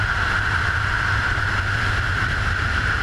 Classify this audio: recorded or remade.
recorded